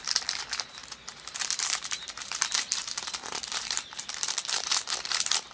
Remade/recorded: remade